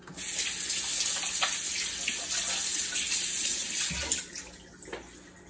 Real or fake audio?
real